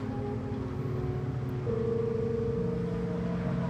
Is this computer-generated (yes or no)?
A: no